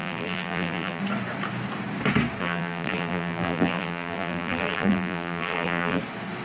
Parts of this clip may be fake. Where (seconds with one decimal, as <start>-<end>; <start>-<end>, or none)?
0.0-1.0; 2.4-6.0